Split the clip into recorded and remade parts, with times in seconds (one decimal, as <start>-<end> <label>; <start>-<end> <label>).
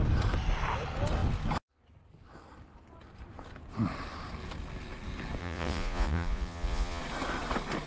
0.0-5.4 recorded; 5.4-7.0 remade; 7.0-7.9 recorded